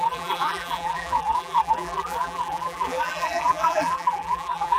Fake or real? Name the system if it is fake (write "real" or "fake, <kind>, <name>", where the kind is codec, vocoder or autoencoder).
fake, vocoder, BigVGAN v2